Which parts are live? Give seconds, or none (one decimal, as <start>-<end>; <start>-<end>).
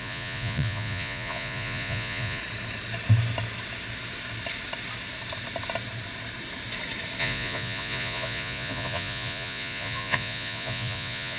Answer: 2.4-7.2